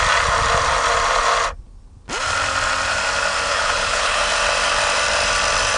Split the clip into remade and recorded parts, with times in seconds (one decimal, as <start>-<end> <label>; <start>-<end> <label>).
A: 0.0-3.5 recorded; 3.5-4.2 remade; 4.2-5.8 recorded